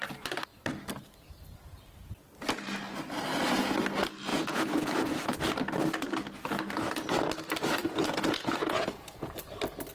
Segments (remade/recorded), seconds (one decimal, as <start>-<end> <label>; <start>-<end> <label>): 0.0-4.3 recorded; 4.3-5.4 remade; 5.4-7.8 recorded; 7.8-9.3 remade; 9.3-9.9 recorded